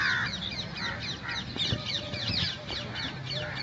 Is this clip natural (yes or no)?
yes